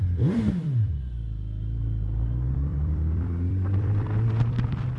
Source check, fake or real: fake